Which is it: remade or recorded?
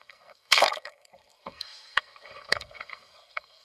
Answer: remade